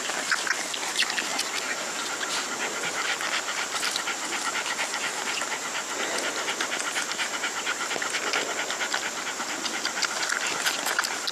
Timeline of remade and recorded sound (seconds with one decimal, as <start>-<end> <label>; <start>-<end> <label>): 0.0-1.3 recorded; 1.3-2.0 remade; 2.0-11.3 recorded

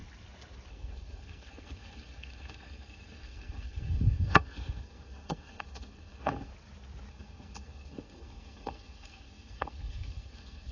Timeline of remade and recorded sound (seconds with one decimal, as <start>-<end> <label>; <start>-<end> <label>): 0.0-0.7 recorded; 0.7-6.5 remade; 6.5-7.1 recorded; 7.1-10.7 remade

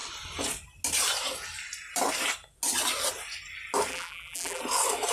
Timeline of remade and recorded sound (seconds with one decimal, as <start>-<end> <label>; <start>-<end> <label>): 0.0-3.9 recorded; 3.9-4.6 remade; 4.6-5.1 recorded